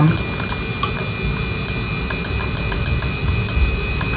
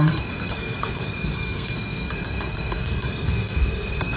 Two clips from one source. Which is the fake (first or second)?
second